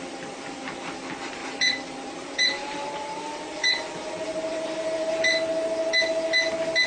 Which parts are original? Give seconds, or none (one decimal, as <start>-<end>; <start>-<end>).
0.0-1.4; 5.1-6.9